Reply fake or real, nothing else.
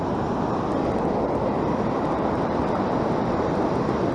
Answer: real